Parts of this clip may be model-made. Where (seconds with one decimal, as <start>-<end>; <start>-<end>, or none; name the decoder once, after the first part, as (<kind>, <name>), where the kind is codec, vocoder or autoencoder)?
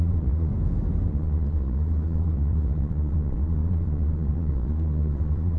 0.0-0.5 (vocoder, Vocos); 1.1-5.6